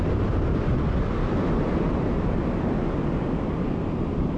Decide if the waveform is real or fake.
real